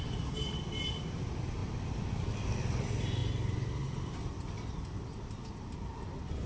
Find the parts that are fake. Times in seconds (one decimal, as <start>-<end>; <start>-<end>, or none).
none